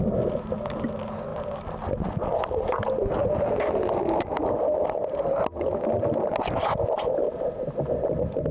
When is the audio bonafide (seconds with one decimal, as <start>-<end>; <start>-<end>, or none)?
0.0-8.5